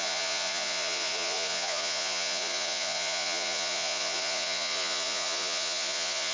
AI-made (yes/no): yes